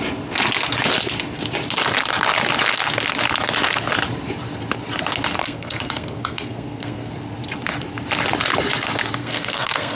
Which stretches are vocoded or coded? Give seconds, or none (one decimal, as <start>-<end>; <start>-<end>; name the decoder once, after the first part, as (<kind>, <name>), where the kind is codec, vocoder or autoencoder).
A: 5.4-7.1 (codec, SNAC); 9.2-10.0